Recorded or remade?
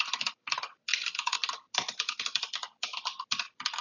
recorded